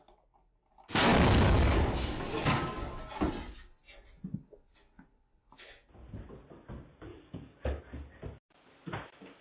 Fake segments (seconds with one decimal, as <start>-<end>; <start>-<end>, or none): 1.1-3.0; 7.1-7.8